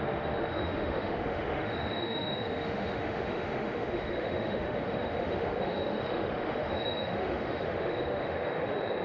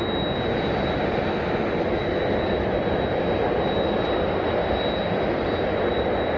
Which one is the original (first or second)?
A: second